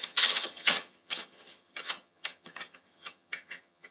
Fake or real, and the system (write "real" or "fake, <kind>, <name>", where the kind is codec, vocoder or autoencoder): fake, vocoder, HiFi-GAN